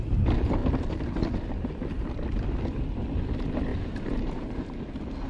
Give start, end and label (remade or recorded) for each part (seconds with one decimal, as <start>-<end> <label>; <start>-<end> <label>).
0.0-3.7 recorded; 3.7-4.8 remade; 4.8-5.3 recorded